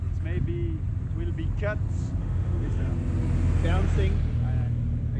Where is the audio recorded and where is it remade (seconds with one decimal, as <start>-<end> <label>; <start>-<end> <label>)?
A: 0.0-2.2 recorded; 2.2-2.9 remade; 2.9-5.2 recorded